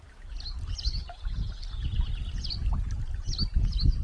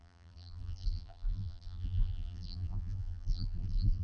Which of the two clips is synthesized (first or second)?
second